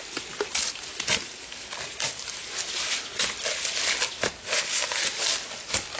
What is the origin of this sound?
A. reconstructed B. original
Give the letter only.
B